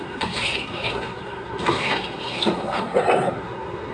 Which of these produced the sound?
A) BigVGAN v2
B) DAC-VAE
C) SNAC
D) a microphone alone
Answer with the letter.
C